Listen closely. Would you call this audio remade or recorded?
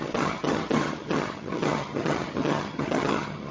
remade